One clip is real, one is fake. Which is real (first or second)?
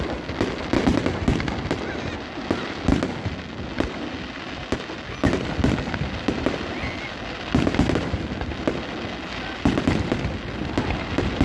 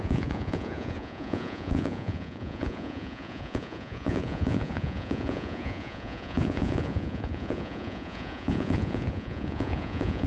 first